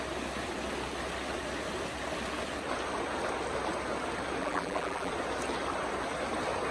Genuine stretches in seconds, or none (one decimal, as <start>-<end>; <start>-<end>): 0.0-4.4; 5.1-6.7